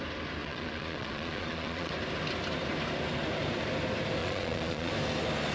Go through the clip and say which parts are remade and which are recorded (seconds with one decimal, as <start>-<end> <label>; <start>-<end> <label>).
0.0-0.4 recorded; 0.4-1.9 remade; 1.9-4.2 recorded; 4.2-4.9 remade; 4.9-5.5 recorded